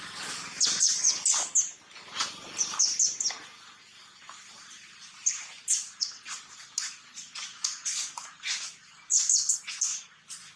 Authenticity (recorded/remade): recorded